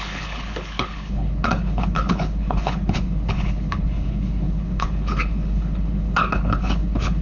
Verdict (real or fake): fake